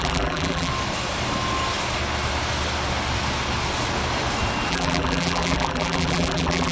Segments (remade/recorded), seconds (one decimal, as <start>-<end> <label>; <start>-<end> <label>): 0.0-0.7 remade; 0.7-4.7 recorded; 4.7-6.7 remade